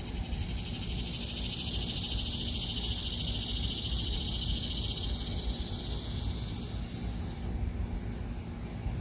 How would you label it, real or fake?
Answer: real